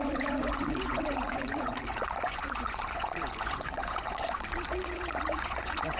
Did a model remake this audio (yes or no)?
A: yes